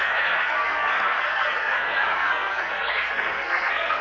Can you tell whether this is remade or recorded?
remade